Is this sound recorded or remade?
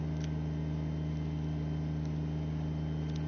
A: recorded